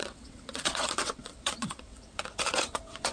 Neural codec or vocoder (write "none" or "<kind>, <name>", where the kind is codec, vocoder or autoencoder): vocoder, WaveNeXt